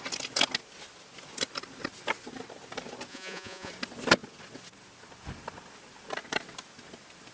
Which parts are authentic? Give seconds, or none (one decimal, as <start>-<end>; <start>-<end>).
0.0-3.1; 3.7-7.3